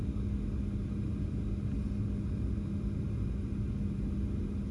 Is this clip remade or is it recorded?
recorded